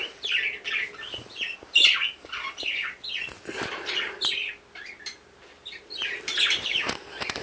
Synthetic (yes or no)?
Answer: no